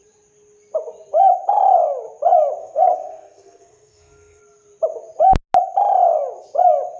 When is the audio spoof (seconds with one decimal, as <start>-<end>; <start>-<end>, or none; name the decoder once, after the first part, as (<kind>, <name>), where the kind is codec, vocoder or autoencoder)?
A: 2.6-4.4 (codec, SNAC)

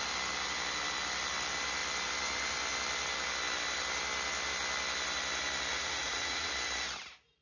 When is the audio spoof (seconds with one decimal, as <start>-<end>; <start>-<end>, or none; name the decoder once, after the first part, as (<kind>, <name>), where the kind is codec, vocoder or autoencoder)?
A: 5.7-6.5 (vocoder, Vocos)

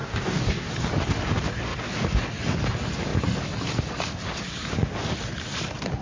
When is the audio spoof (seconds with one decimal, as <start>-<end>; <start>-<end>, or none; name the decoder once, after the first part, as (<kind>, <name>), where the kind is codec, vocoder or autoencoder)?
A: 0.0-0.7 (codec, DAC)

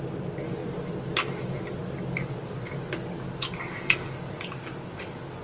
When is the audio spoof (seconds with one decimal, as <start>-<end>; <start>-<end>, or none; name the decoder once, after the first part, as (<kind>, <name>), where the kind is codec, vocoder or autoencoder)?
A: none

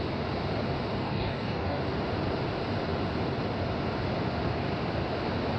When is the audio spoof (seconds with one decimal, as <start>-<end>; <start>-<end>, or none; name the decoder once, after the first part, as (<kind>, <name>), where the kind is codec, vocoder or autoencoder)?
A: 1.0-1.8 (codec, DAC)

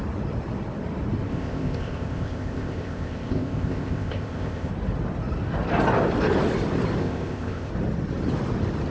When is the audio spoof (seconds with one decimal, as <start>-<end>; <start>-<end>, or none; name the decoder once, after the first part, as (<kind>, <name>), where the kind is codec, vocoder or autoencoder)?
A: 1.3-4.7 (codec, ZipCodec); 7.0-7.7

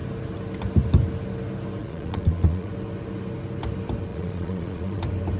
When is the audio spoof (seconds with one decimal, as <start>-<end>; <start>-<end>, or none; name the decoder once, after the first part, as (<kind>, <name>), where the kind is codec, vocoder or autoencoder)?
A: 1.8-2.7 (vocoder, Vocos); 4.1-5.0

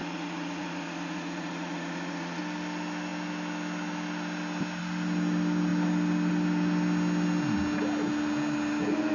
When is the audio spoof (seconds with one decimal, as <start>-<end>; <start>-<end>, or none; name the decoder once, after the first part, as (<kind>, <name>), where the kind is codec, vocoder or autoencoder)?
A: 0.0-2.4 (vocoder, Vocos)